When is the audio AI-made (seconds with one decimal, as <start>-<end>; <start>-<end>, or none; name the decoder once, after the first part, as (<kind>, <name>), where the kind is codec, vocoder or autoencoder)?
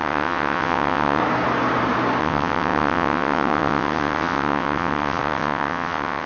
0.0-1.2 (vocoder, WaveNeXt); 2.2-6.3